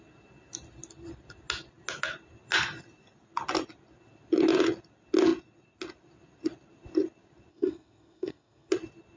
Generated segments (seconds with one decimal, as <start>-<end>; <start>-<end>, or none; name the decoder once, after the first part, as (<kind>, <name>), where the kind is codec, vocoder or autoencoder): 7.5-8.7 (codec, SNAC)